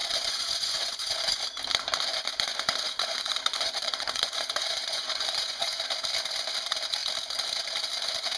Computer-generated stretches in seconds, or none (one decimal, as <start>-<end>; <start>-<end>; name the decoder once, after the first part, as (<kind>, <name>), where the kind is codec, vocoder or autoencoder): 0.0-1.4 (vocoder, Vocos); 2.1-5.8